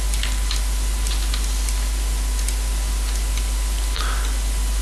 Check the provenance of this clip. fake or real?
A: real